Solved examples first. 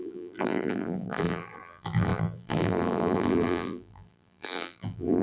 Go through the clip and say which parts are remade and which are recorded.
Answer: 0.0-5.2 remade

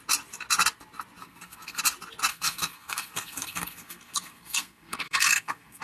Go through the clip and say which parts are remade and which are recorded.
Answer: 0.0-1.2 recorded; 1.2-1.8 remade; 1.8-2.3 recorded; 2.3-5.8 remade